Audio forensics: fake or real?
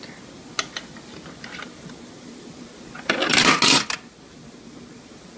real